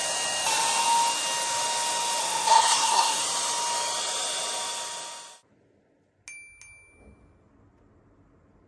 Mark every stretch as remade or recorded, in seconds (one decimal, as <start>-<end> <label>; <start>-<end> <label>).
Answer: 0.0-2.2 recorded; 2.2-3.2 remade; 3.2-8.7 recorded